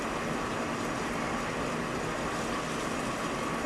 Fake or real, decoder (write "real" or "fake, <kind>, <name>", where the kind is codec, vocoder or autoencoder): real